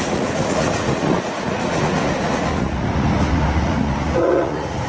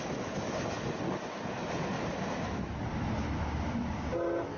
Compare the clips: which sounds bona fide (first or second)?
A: second